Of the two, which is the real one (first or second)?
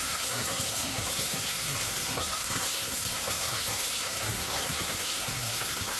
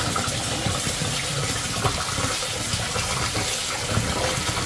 second